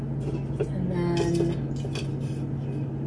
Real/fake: real